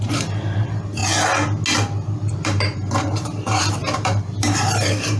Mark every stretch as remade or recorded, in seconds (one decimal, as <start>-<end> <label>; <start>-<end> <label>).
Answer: 0.0-1.0 remade; 1.0-2.3 recorded; 2.3-5.2 remade